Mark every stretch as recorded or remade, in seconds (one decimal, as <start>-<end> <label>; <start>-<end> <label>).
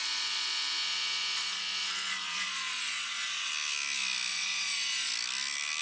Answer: 0.0-3.5 remade; 3.5-4.3 recorded; 4.3-5.1 remade; 5.1-5.8 recorded